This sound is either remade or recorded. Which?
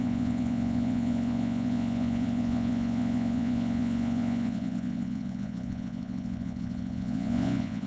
remade